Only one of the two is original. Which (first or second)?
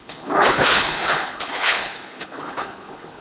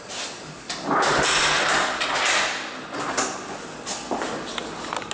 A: second